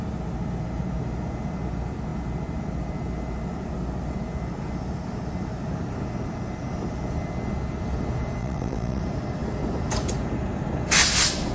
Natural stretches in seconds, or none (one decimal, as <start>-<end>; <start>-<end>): 0.0-8.4; 9.0-11.5